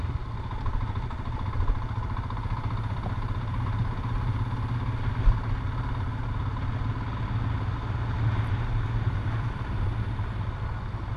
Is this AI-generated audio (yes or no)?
no